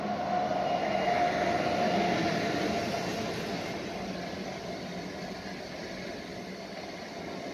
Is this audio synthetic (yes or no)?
no